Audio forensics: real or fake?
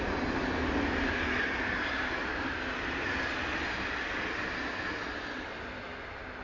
real